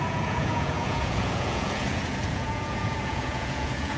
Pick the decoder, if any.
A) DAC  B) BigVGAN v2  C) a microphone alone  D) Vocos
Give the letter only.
D